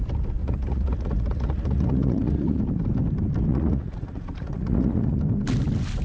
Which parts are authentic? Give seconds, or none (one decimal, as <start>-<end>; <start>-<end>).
0.0-0.4; 2.6-3.5; 5.2-6.0